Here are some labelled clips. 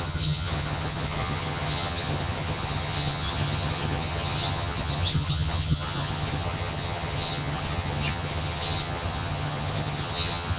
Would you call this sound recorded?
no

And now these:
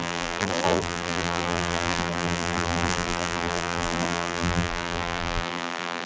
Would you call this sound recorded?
no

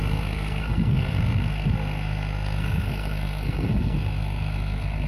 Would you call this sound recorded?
no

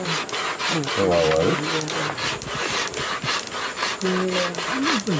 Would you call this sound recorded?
yes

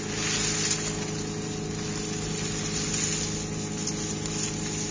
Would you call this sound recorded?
yes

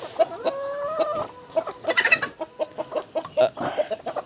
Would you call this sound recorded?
yes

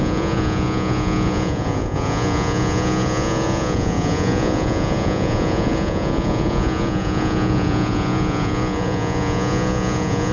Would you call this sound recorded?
no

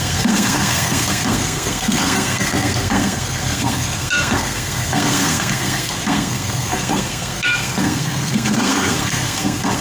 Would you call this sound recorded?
no